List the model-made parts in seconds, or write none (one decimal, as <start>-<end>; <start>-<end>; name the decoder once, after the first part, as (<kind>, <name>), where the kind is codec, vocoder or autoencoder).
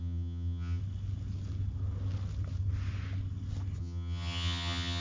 0.0-0.8 (vocoder, HiFi-GAN); 3.8-5.0